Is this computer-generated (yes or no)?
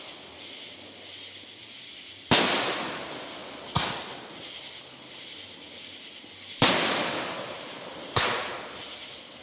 no